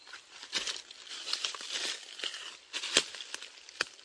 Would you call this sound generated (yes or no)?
no